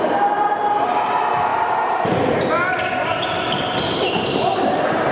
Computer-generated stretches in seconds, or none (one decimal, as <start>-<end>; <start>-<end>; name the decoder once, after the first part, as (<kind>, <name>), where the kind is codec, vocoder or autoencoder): 0.6-1.1 (vocoder, BigVGAN v2); 1.5-2.5